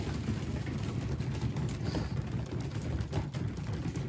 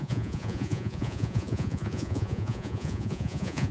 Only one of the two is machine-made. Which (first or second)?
second